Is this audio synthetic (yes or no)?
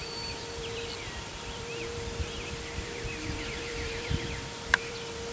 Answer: yes